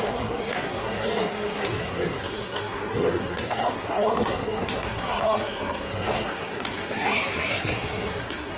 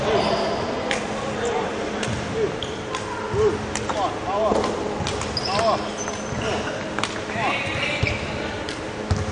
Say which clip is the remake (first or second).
first